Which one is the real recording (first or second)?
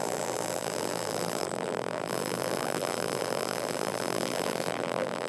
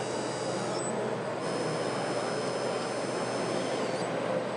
second